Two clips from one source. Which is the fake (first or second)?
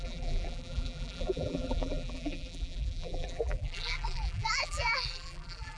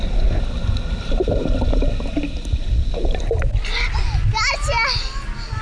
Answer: first